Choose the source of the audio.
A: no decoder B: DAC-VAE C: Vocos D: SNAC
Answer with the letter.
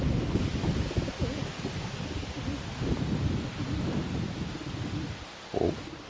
A